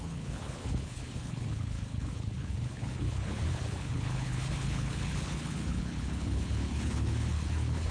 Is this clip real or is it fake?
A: fake